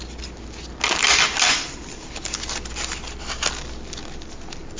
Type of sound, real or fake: real